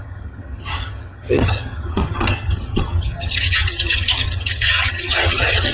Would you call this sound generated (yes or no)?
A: yes